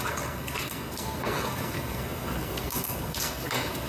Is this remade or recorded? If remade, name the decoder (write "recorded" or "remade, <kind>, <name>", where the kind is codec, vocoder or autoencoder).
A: remade, codec, SNAC